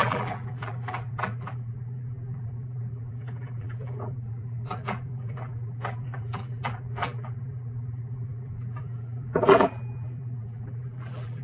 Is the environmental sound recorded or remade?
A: remade